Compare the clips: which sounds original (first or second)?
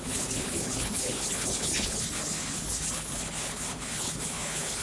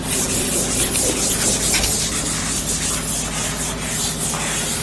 second